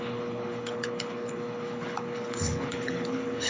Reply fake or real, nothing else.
fake